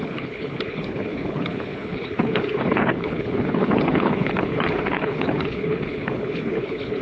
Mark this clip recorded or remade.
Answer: remade